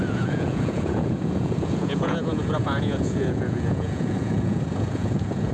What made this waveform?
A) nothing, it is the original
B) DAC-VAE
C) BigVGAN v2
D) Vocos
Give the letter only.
D